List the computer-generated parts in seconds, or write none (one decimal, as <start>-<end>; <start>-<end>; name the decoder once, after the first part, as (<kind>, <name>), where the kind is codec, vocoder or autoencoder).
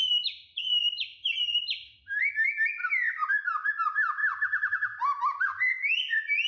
none